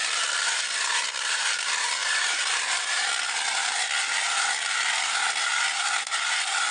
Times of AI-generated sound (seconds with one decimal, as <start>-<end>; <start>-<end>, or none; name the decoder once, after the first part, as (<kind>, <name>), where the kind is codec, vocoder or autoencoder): 2.0-3.0 (vocoder, BigVGAN v2)